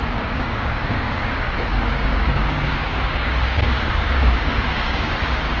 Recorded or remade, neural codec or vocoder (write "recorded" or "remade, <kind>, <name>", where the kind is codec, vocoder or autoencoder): remade, codec, DAC